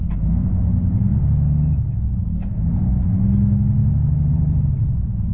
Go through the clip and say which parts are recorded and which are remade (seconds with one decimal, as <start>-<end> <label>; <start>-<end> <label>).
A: 0.0-1.1 remade; 1.1-4.3 recorded; 4.3-5.3 remade